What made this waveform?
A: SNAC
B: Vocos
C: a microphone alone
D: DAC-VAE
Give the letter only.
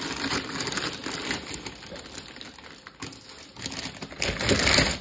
C